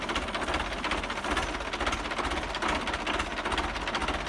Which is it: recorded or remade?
recorded